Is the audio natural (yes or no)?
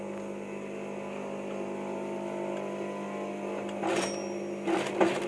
yes